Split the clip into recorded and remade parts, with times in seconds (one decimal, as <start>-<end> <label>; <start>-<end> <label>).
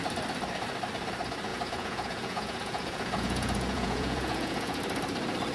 0.0-1.5 recorded; 1.5-4.8 remade; 4.8-5.5 recorded